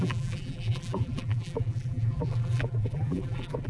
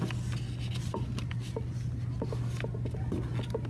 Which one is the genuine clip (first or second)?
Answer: second